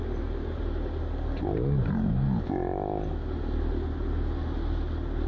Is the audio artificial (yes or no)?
no